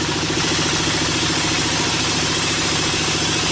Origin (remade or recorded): recorded